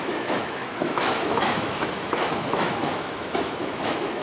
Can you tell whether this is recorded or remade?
remade